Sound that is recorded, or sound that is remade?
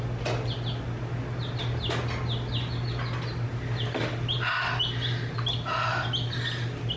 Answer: recorded